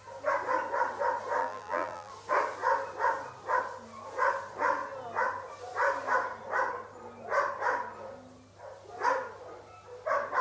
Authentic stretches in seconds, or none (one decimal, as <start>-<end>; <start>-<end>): 0.0-1.4; 2.1-10.4

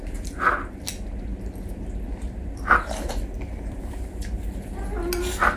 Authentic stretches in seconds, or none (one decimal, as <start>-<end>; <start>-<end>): 0.0-1.3; 4.7-5.6